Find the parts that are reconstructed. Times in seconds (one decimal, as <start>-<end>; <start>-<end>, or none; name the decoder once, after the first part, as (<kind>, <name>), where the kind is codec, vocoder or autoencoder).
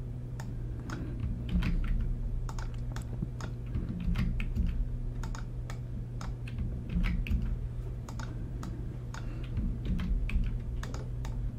0.0-1.2 (vocoder, BigVGAN v2); 2.0-3.3; 7.9-11.6